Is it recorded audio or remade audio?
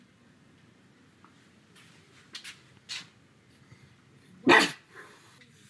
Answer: recorded